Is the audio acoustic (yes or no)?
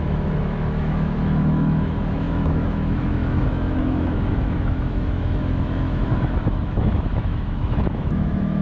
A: no